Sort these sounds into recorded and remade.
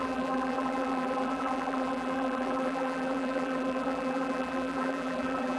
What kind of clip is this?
remade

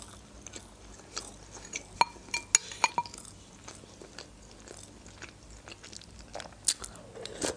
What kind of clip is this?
recorded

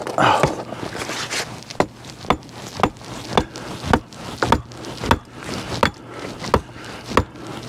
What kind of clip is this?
recorded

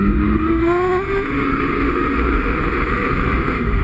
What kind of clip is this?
remade